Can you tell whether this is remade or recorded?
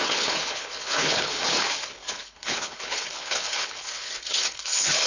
remade